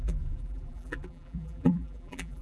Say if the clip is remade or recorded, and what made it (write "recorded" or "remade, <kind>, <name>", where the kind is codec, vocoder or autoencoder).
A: remade, vocoder, BigVGAN v2